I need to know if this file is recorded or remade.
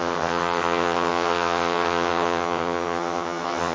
remade